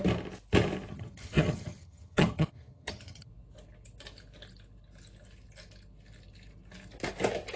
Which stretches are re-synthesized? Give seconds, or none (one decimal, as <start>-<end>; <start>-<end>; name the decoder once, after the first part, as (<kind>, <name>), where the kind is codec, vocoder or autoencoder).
0.9-3.3 (vocoder, HiFi-GAN)